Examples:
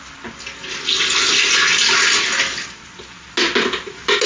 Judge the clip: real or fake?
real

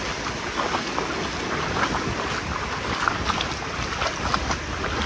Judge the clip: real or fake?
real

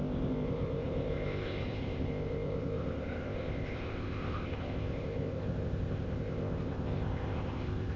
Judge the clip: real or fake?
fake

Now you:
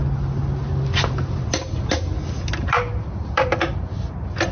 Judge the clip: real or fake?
real